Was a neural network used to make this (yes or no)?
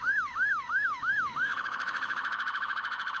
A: yes